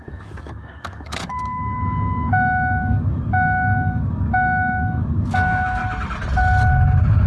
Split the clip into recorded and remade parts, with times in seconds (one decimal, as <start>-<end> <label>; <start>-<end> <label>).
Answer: 0.0-5.8 remade; 5.8-7.3 recorded